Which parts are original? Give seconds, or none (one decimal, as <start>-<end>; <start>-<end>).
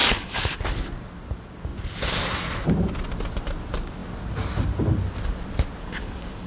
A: 0.6-5.8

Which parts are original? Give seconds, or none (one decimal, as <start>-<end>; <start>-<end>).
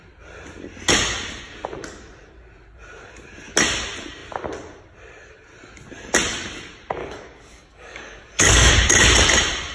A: 0.0-7.0; 8.7-9.7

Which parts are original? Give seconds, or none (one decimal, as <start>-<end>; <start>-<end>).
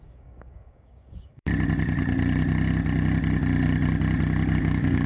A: 1.5-4.6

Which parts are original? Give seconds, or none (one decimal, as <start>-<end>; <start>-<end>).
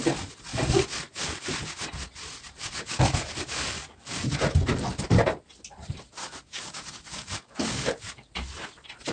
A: 0.0-0.5; 1.5-2.6; 4.1-6.2; 8.3-9.1